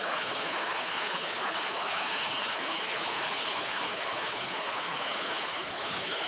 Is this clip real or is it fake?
fake